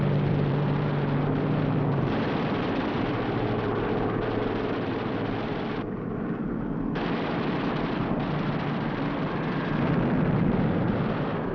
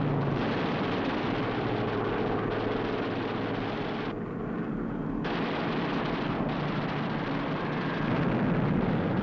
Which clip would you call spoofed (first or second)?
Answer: first